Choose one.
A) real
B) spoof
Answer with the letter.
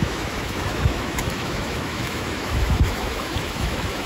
B